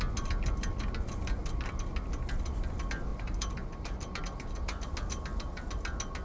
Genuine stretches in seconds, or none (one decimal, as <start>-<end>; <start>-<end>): 0.0-3.1; 4.2-6.2